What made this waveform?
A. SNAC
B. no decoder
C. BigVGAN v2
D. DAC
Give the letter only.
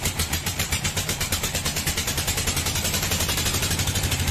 C